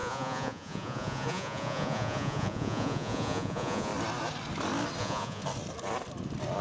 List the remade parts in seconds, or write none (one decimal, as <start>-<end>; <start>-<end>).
0.0-3.9; 5.0-5.4